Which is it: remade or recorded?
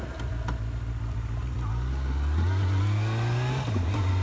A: recorded